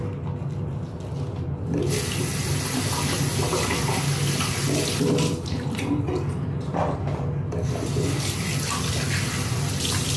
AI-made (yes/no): no